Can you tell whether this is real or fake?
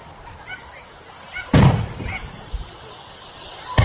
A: real